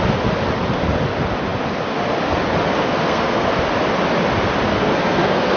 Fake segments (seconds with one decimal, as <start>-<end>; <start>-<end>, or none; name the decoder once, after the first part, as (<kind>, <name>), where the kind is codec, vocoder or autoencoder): 2.7-3.5 (codec, SNAC); 4.7-5.6